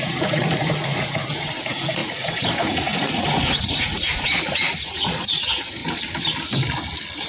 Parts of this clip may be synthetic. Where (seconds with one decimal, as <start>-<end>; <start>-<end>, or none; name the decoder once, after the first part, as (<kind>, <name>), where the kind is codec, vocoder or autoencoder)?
0.0-5.8 (vocoder, Vocos)